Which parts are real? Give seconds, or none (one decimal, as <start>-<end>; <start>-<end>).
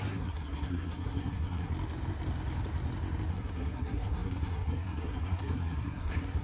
1.7-3.3